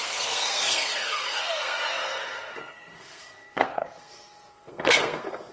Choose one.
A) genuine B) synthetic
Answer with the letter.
B